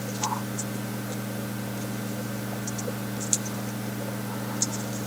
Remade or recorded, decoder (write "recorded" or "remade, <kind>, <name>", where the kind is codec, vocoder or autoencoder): recorded